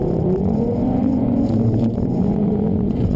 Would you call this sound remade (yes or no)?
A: yes